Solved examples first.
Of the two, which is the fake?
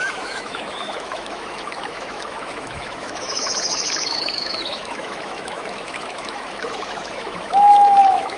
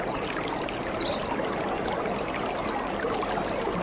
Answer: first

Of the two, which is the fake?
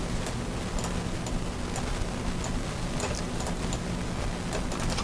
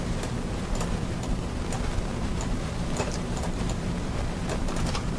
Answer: second